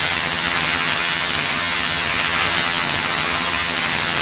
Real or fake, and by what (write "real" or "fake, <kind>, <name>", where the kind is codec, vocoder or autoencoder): fake, vocoder, HiFi-GAN